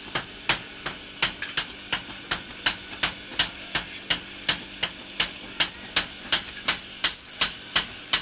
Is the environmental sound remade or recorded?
recorded